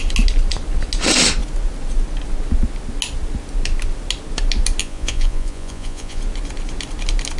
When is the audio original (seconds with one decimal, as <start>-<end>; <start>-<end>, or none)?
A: 0.0-4.8; 6.2-7.4